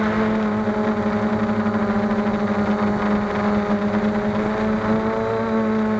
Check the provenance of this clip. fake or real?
real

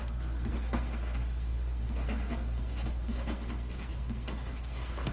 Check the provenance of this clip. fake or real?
fake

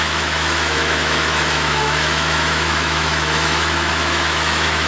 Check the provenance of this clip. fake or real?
fake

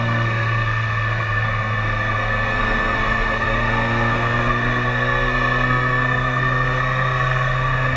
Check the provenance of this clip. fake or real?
fake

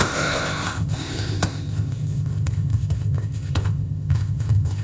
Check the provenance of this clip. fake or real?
fake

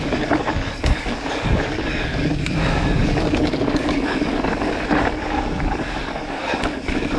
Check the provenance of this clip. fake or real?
fake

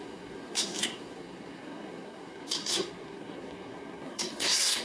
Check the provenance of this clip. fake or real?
fake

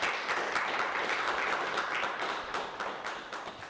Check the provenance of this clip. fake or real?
real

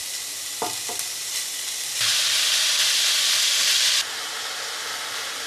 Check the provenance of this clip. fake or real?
real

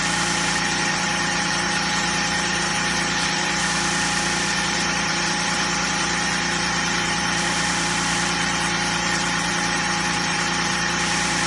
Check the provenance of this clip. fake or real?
fake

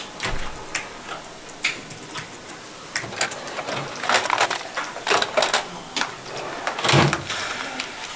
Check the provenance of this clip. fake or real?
real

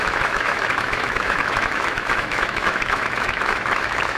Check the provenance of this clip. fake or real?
fake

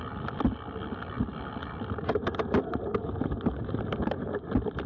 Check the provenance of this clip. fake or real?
real